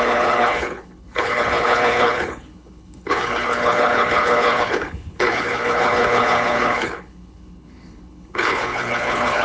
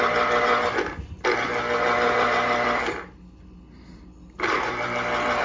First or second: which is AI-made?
first